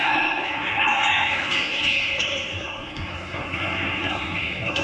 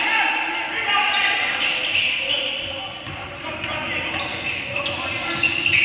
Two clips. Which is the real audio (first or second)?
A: second